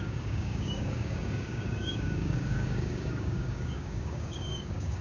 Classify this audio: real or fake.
fake